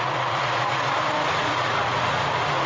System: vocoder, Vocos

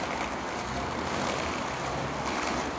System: vocoder, BigVGAN v2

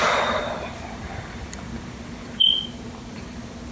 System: vocoder, BigVGAN v2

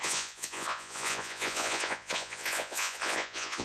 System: vocoder, Vocos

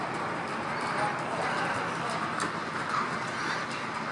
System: none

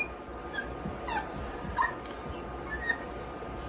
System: none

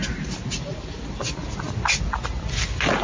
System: none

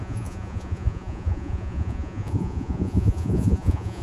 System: vocoder, Vocos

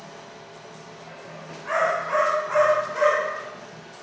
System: none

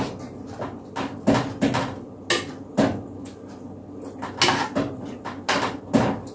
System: none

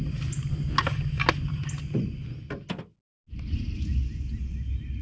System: none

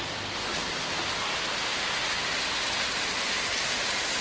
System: none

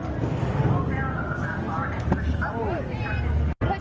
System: none